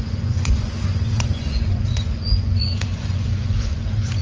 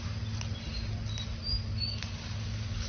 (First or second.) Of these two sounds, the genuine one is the second